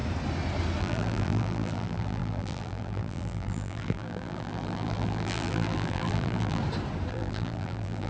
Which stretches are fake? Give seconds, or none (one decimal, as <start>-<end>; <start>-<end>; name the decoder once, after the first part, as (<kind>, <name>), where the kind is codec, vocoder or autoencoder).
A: 0.8-6.6 (vocoder, BigVGAN v2); 7.1-8.1